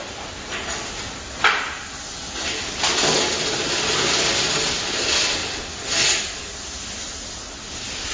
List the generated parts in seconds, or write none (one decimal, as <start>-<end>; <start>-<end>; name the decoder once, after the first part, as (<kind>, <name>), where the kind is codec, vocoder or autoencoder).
none